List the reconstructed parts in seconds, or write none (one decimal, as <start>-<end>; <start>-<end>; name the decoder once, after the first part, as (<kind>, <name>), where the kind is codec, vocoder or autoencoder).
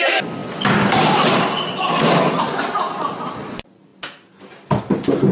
none